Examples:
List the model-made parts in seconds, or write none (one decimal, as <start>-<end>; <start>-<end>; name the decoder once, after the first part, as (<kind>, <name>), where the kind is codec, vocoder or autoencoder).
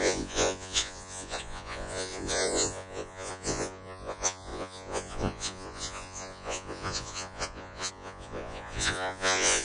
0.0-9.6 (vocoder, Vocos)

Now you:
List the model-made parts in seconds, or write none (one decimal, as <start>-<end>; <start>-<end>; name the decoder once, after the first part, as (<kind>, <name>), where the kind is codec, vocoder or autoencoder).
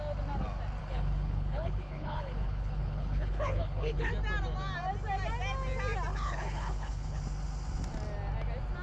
0.8-4.1 (codec, HILCodec); 6.1-7.2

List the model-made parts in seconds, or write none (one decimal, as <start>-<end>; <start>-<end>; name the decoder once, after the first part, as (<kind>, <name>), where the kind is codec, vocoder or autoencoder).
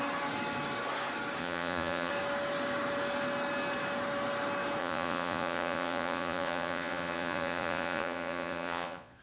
1.4-2.1 (vocoder, Vocos); 4.8-9.2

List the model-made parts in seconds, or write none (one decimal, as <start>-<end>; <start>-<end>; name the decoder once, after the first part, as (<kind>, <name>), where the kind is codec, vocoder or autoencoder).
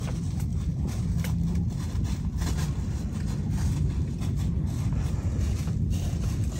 none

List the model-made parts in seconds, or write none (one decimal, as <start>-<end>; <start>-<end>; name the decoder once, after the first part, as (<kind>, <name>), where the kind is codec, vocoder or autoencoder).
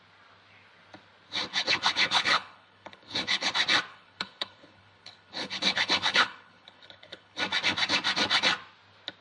1.5-3.5 (codec, HILCodec); 3.9-7.4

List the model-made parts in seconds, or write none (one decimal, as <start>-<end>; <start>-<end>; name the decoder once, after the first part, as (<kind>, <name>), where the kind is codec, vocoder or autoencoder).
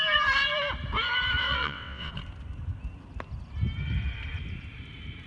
1.4-2.1 (vocoder, WaveNeXt)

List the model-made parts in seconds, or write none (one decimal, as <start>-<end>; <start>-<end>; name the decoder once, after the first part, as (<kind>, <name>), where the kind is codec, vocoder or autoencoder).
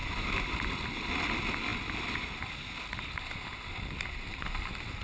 none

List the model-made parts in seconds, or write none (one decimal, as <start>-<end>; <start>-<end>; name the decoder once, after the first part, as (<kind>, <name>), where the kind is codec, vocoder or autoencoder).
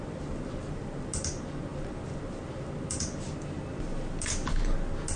none